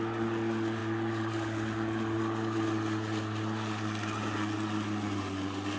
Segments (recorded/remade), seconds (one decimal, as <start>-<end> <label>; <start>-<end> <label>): 0.0-5.8 recorded